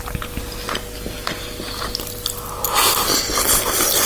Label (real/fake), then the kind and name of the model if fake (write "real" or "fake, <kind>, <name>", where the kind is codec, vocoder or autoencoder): real